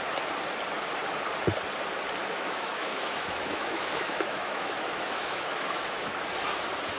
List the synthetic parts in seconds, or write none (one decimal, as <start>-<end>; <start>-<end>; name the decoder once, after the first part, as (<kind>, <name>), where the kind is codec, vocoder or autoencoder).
2.2-6.2 (autoencoder, DAC-VAE)